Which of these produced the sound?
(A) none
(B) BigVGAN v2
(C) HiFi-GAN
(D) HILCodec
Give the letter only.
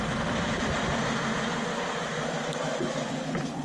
B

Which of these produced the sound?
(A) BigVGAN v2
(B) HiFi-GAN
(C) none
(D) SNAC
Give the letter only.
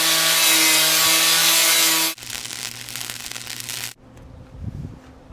C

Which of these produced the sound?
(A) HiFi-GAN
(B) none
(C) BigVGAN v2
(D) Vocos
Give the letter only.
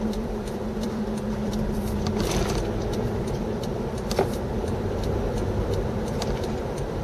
C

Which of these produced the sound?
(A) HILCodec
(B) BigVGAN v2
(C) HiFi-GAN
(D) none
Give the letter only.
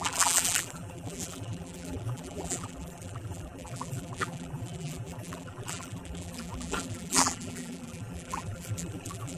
B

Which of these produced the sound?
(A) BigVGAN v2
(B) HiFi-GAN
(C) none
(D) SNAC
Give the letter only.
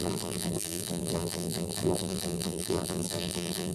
A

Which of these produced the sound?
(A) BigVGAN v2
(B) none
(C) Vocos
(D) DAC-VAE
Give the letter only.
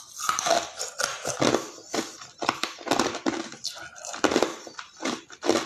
A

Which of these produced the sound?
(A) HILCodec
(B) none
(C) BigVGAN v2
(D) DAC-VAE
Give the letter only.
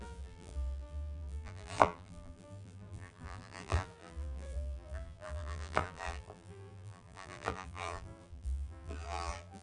C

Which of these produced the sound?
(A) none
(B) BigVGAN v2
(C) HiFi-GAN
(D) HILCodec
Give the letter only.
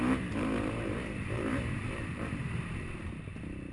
B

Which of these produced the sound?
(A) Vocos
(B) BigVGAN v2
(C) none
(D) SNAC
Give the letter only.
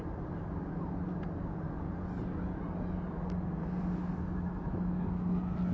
C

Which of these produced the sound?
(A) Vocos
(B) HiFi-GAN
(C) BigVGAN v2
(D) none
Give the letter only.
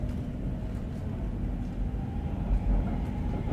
D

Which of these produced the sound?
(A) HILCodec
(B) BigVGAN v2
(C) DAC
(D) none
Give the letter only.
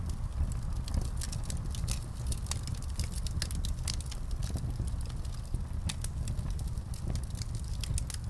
D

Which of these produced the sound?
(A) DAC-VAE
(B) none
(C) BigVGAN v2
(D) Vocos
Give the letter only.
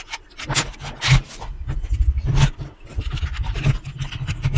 B